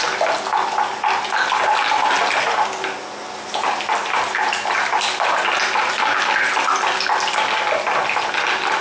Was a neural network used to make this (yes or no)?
no